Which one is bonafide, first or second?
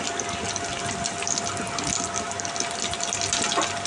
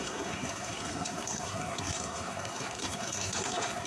first